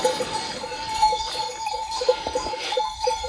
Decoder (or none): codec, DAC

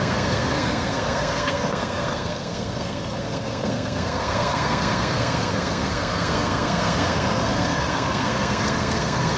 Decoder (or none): codec, SNAC